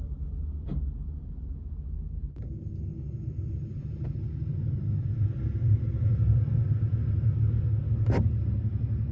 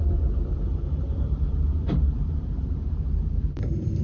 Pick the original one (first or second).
first